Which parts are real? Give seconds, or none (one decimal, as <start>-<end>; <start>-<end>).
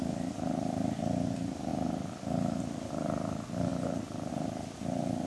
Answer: 0.0-5.3